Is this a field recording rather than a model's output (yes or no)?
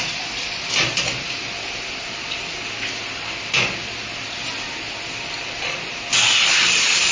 yes